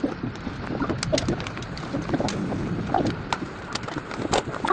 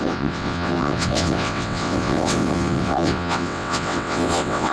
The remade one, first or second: second